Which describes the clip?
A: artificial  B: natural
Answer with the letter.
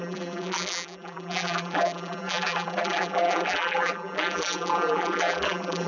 A